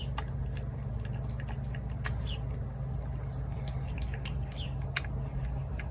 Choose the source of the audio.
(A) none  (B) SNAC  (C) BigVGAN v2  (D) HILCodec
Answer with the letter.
A